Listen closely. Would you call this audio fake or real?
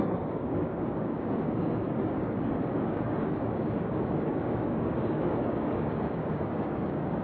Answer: fake